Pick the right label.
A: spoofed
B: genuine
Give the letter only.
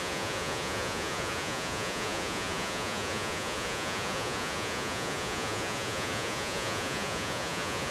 A